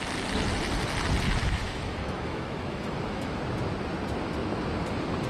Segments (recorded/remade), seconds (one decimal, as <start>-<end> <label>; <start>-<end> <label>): 0.0-1.4 recorded; 1.4-3.4 remade; 3.4-5.3 recorded